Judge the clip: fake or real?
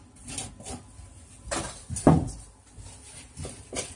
real